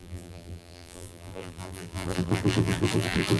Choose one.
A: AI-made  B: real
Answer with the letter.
A